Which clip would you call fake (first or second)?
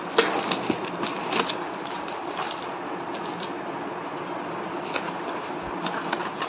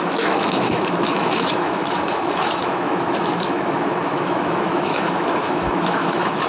second